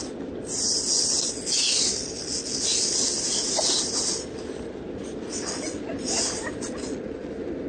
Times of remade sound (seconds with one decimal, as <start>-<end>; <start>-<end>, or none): none